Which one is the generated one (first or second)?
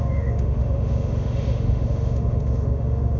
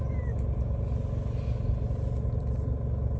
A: first